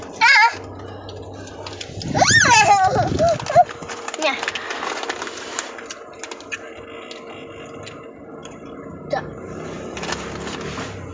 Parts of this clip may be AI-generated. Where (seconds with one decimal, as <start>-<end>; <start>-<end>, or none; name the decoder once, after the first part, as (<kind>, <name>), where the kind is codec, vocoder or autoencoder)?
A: none